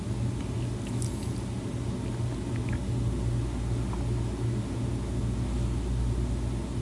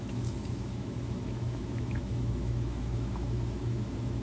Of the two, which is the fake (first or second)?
second